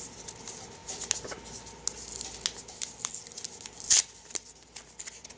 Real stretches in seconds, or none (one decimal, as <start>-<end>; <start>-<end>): 0.0-5.4